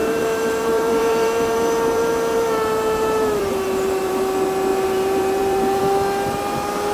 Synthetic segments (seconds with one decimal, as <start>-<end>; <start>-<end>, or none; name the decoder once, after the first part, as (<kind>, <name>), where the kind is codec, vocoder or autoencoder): 0.0-4.1 (vocoder, BigVGAN v2); 4.7-5.8